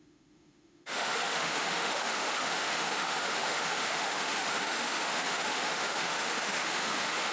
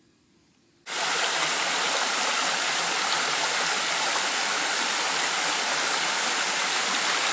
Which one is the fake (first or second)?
first